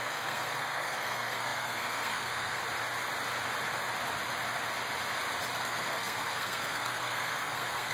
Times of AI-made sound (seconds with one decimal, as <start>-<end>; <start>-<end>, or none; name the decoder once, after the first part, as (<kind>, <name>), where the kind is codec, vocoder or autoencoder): 0.0-2.6 (codec, SNAC); 5.6-7.9